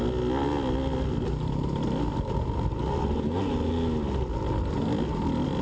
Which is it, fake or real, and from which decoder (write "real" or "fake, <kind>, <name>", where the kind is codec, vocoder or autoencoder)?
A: real